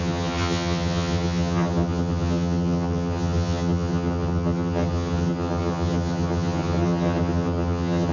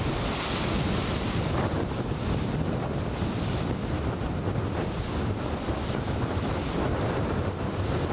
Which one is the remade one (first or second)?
first